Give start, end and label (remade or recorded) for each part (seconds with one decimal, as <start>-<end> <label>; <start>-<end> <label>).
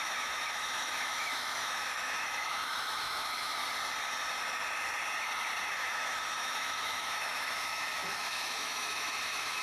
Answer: 0.0-3.6 remade; 3.6-5.7 recorded; 5.7-9.6 remade